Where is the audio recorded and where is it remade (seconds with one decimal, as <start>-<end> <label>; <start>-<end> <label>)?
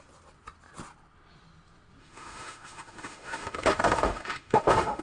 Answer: 0.0-2.0 recorded; 2.0-5.0 remade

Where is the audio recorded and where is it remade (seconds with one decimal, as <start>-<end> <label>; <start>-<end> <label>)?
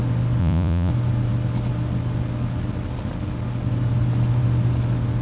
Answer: 0.0-0.4 recorded; 0.4-0.9 remade; 0.9-5.2 recorded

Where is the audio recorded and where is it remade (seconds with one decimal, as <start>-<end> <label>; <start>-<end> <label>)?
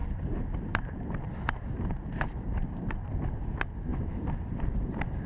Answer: 0.0-3.2 remade; 3.2-3.9 recorded; 3.9-5.3 remade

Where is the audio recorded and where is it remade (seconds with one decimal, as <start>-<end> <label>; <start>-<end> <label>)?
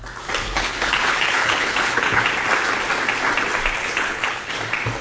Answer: 0.0-0.4 recorded; 0.4-2.2 remade; 2.2-3.8 recorded; 3.8-4.5 remade; 4.5-5.0 recorded